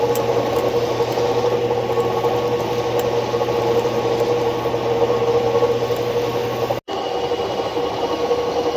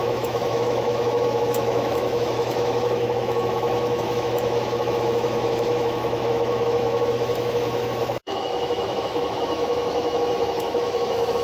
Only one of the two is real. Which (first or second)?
first